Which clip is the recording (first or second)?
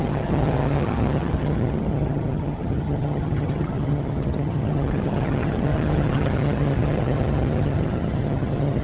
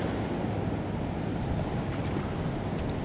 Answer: second